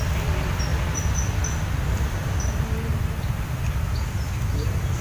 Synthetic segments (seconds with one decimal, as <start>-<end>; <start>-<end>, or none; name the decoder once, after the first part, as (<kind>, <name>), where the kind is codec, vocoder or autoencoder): none